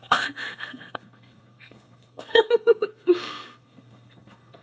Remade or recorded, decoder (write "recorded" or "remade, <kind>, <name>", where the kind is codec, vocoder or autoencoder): remade, codec, SNAC